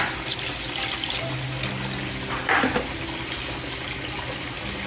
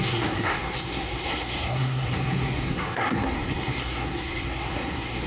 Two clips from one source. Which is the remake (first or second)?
second